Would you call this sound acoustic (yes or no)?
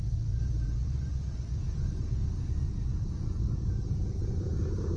no